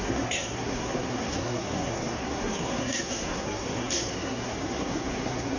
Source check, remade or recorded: remade